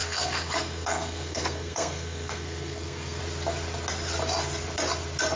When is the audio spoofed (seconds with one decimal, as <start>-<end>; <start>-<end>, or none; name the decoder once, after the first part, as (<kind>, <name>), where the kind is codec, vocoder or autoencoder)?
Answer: 0.0-3.2 (codec, SNAC)